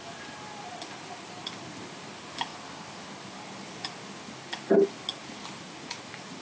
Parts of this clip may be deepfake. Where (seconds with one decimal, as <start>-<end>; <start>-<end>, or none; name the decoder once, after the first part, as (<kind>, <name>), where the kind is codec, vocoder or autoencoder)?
none